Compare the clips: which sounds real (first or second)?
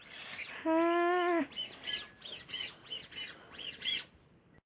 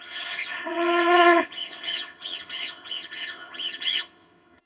first